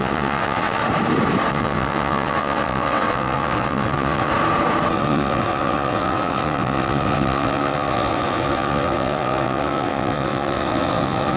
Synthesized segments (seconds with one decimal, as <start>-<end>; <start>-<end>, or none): 0.0-0.8; 1.5-4.3; 4.9-11.4